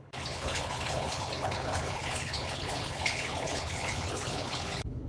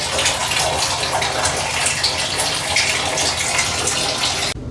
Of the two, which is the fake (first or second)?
first